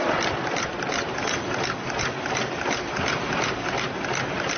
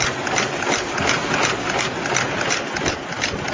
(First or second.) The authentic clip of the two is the second